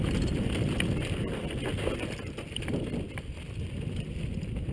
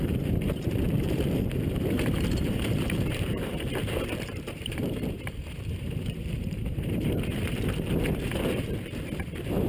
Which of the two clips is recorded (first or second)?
first